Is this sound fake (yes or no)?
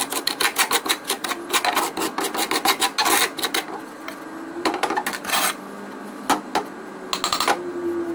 no